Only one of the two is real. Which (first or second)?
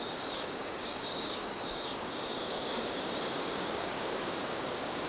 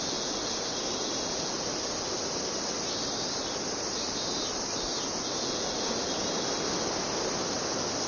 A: second